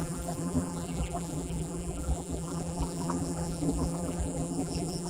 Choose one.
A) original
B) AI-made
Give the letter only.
B